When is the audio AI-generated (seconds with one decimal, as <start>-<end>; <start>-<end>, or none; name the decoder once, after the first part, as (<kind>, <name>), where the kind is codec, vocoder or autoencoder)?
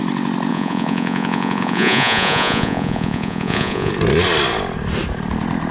0.5-3.9 (vocoder, Vocos)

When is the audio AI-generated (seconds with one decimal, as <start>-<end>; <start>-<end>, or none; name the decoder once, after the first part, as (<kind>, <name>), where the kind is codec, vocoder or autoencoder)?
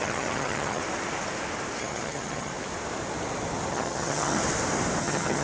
0.0-0.8 (vocoder, HiFi-GAN); 1.8-2.5; 3.7-4.4; 5.0-5.4